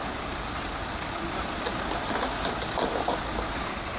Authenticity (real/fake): real